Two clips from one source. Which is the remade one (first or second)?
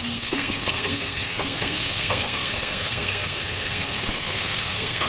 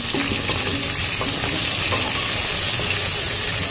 first